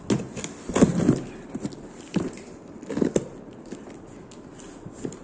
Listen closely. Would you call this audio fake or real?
real